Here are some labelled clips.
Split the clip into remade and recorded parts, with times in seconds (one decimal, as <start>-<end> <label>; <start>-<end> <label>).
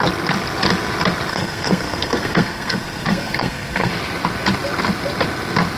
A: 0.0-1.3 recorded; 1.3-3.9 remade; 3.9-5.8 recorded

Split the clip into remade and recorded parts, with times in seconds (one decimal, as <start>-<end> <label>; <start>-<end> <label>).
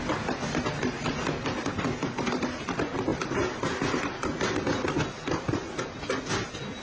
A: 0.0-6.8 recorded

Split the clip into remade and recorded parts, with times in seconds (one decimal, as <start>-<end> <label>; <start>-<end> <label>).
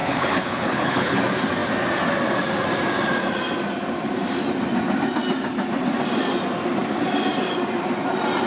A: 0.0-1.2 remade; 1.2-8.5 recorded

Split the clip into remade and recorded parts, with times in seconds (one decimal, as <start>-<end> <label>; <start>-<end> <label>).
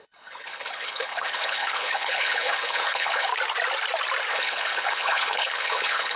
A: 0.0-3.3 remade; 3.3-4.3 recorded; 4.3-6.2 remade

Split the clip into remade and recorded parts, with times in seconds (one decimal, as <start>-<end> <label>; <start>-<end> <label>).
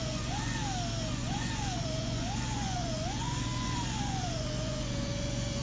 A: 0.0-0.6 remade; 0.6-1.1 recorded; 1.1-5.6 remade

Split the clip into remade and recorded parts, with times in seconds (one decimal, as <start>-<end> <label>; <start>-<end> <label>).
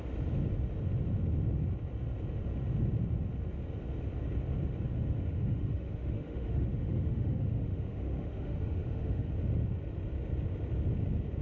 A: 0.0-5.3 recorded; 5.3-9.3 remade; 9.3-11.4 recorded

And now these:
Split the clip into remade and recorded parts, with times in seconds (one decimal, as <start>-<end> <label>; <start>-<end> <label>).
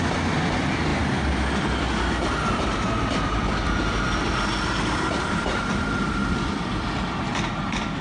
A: 0.0-4.5 recorded; 4.5-6.2 remade; 6.2-8.0 recorded